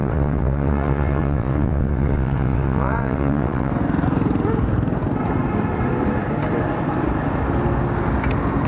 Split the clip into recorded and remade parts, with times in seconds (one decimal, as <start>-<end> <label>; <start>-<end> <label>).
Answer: 0.0-3.7 remade; 3.7-8.7 recorded